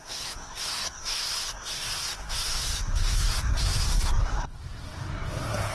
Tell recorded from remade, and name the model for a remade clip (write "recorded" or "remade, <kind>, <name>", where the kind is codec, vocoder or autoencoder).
remade, codec, SNAC